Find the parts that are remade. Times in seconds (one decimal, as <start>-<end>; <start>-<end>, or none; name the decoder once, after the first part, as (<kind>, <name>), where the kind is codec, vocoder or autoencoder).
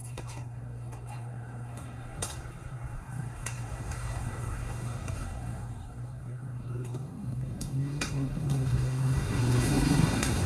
0.0-10.5 (codec, SNAC)